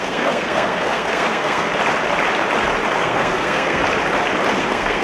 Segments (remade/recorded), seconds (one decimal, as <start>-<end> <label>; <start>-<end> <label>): 0.0-1.7 remade; 1.7-3.0 recorded; 3.0-3.8 remade; 3.8-4.6 recorded; 4.6-5.0 remade